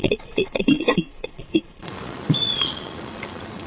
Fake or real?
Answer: fake